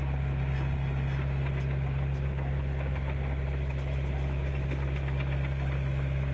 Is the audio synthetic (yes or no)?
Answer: no